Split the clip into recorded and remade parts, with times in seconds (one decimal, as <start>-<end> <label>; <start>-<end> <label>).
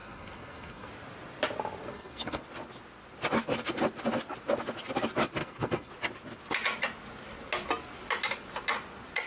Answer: 0.0-0.9 remade; 0.9-1.8 recorded; 1.8-2.4 remade; 2.4-5.4 recorded; 5.4-5.9 remade; 5.9-9.3 recorded